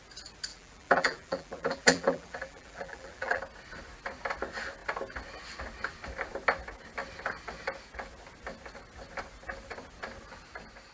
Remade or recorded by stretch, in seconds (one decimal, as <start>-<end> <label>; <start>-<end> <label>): 0.0-0.5 recorded; 0.5-3.4 remade; 3.4-10.9 recorded